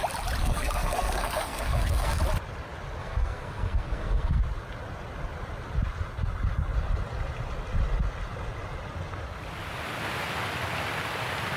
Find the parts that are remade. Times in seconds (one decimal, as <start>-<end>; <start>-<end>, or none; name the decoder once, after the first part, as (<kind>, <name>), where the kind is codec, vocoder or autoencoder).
0.4-2.2 (codec, SNAC); 3.0-4.4

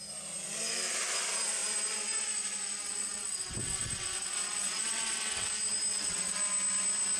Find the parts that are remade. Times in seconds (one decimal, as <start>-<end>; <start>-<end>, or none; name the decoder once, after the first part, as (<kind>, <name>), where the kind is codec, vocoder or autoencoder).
2.8-5.5 (vocoder, WaveNeXt); 5.9-6.4

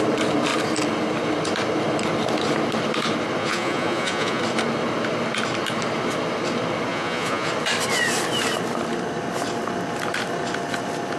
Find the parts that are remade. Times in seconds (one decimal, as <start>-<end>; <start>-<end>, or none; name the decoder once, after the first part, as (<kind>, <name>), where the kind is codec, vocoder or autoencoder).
3.4-4.4 (vocoder, Vocos); 6.9-7.5

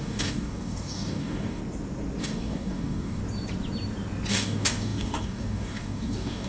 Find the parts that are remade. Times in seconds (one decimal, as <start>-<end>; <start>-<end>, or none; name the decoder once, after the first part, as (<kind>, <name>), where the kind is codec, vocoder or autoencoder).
0.0-1.6 (codec, DAC); 2.2-3.2; 4.3-6.5